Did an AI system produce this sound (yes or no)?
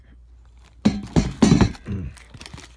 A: no